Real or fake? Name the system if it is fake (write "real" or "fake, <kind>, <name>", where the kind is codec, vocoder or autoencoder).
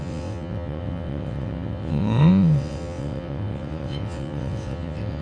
fake, vocoder, WaveNeXt